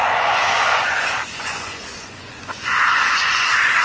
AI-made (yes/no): yes